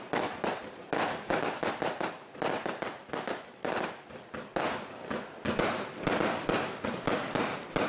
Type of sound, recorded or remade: recorded